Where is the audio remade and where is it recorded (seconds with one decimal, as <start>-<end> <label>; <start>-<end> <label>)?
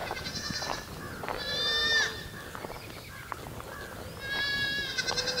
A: 0.0-0.6 remade; 0.6-5.4 recorded